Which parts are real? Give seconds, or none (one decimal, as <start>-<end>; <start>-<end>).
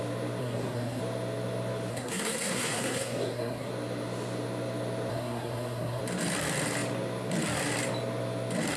0.0-0.4; 1.0-1.9; 3.7-5.1; 6.0-8.8